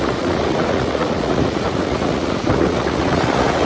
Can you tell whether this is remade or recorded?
remade